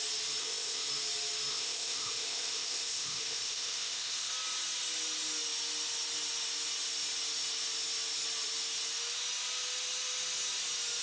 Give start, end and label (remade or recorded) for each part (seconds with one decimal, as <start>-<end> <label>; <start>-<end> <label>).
0.0-0.4 recorded; 0.4-0.9 remade; 0.9-1.5 recorded; 1.5-4.3 remade; 4.3-11.0 recorded